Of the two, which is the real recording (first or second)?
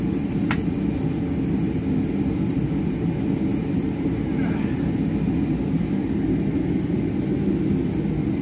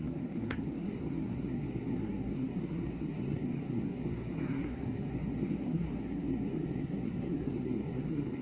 first